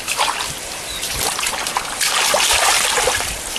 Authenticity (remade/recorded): recorded